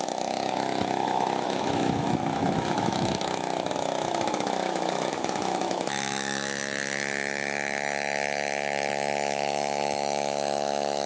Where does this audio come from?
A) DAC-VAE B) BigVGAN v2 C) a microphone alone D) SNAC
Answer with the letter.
A